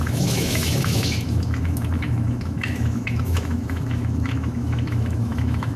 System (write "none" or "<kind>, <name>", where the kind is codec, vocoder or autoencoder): autoencoder, DAC-VAE